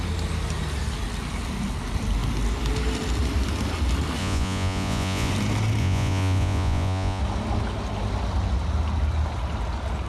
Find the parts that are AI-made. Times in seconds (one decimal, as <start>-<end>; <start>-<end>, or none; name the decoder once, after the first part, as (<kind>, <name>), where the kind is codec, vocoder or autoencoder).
4.2-5.3 (vocoder, Vocos); 5.8-7.2